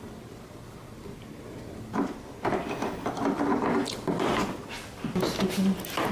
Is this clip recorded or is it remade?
recorded